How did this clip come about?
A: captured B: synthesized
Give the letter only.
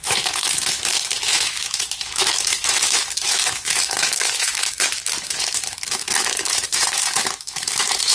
B